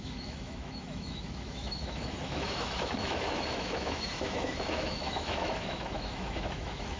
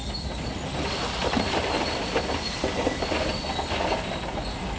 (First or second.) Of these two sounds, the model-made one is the first